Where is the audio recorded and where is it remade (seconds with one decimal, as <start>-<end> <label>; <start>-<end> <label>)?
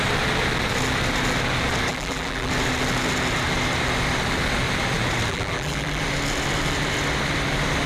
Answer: 0.0-1.9 recorded; 1.9-2.5 remade; 2.5-5.3 recorded; 5.3-6.0 remade; 6.0-7.9 recorded